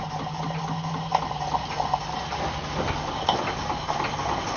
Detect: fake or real real